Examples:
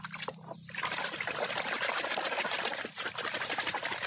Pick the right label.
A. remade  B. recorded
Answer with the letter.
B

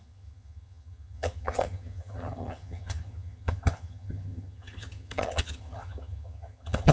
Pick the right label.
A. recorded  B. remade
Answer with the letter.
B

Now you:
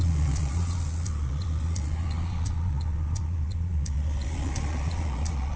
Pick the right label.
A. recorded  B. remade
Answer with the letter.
B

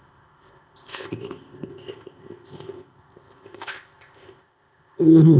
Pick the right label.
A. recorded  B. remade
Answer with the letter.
B